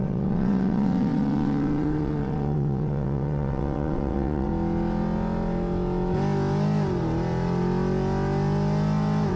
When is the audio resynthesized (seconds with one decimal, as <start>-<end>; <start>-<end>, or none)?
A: 0.0-4.5